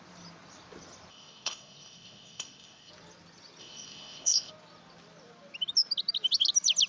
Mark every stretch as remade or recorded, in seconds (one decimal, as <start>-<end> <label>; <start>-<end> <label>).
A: 0.0-1.1 recorded; 1.1-2.9 remade; 2.9-3.6 recorded; 3.6-4.5 remade; 4.5-6.9 recorded